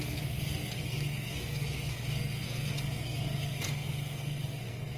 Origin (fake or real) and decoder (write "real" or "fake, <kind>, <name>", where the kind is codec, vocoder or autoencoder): fake, codec, SNAC